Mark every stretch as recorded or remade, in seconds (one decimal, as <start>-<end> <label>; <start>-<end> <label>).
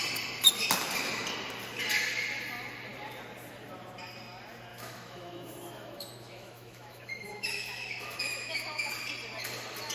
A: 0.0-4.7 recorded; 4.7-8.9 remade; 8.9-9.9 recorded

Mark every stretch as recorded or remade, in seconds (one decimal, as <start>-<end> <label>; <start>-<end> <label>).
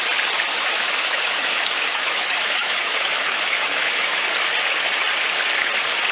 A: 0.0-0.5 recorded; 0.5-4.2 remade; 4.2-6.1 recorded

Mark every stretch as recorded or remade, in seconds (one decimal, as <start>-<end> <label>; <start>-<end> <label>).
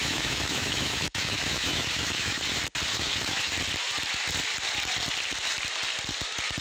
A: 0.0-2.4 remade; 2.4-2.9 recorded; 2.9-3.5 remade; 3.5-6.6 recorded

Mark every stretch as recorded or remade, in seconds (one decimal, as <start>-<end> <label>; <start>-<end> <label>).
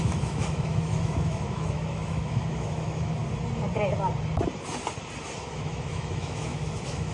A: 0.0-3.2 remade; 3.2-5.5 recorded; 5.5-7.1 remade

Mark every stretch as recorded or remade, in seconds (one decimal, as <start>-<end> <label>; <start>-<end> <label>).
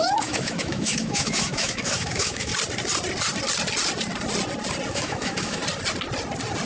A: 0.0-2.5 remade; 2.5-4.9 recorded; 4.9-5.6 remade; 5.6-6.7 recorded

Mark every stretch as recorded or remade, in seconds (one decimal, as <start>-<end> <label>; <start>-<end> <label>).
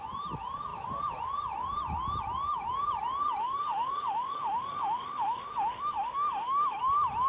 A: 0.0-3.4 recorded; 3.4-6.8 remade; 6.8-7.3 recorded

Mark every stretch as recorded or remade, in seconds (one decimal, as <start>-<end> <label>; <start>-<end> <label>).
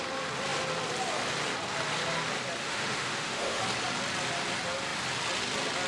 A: 0.0-2.6 recorded; 2.6-3.6 remade; 3.6-5.9 recorded